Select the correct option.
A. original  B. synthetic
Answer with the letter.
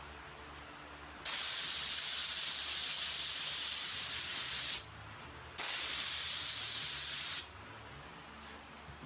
A